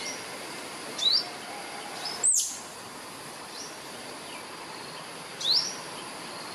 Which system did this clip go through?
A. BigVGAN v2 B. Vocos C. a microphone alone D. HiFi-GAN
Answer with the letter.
C